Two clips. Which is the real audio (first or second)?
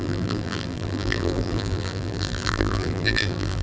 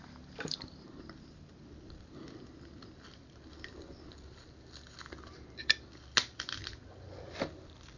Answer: second